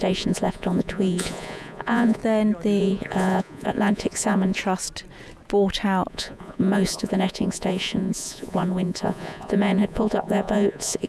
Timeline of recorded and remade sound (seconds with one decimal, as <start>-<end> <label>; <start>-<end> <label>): 0.0-2.2 remade; 2.2-2.8 recorded; 2.8-4.6 remade; 4.6-6.1 recorded; 6.1-11.1 remade